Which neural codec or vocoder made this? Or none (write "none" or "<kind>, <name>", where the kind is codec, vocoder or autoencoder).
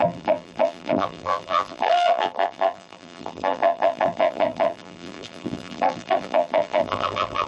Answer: vocoder, BigVGAN v2